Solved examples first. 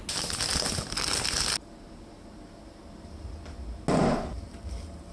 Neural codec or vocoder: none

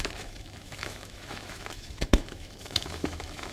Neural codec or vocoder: autoencoder, DAC-VAE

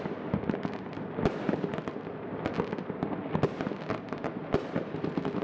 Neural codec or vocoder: none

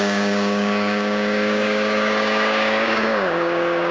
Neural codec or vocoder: codec, DAC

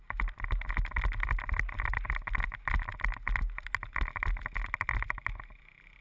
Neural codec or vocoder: none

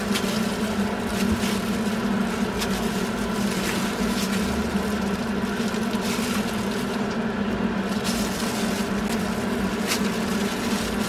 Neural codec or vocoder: none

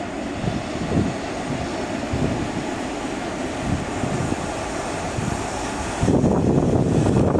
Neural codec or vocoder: none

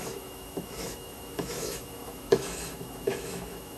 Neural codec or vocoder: autoencoder, DAC-VAE